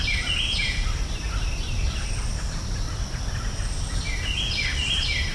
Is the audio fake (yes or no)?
yes